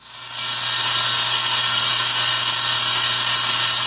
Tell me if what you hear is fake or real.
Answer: real